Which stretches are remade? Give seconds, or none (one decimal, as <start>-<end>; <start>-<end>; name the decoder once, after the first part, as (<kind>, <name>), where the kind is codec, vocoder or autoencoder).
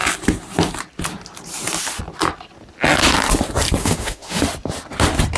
3.8-4.4 (autoencoder, DAC-VAE)